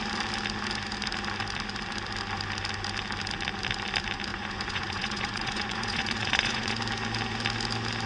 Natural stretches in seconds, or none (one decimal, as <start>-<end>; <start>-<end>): 0.0-4.3; 6.8-8.1